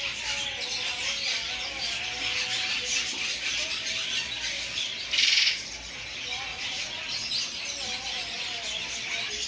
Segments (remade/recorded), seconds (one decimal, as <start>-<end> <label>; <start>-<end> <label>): 0.0-6.5 recorded; 6.5-7.3 remade; 7.3-9.5 recorded